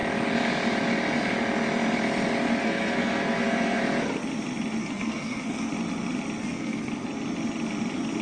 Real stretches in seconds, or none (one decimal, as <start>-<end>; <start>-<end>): 0.0-2.6; 3.8-4.8; 5.7-6.4; 6.9-8.2